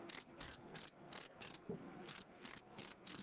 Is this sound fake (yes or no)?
yes